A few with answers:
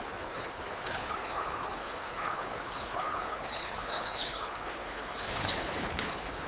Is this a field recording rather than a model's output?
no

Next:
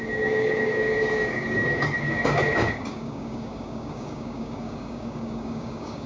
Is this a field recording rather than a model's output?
no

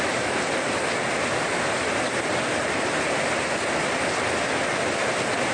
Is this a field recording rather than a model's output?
yes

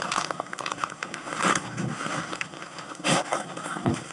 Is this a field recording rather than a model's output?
no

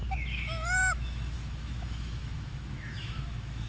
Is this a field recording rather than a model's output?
no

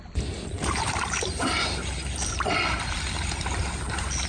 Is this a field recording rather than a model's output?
yes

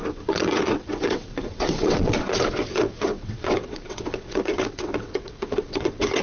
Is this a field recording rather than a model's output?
no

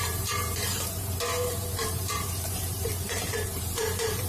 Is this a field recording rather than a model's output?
no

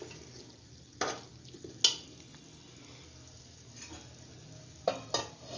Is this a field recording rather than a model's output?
yes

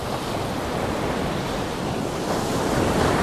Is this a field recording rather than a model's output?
yes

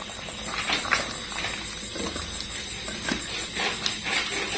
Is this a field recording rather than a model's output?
yes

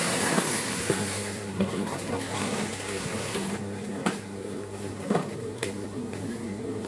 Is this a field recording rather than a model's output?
no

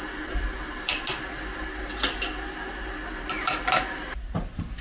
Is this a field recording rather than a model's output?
yes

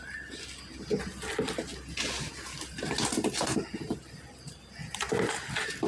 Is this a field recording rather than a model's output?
yes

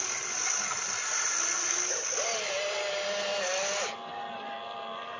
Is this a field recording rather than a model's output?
yes